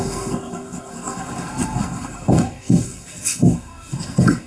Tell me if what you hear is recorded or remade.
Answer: remade